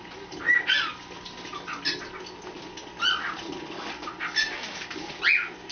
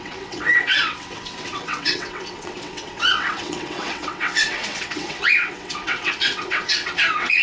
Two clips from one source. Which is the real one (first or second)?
first